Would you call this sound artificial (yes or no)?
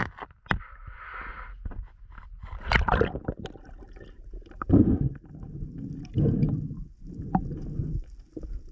no